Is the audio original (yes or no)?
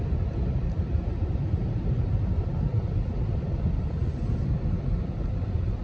yes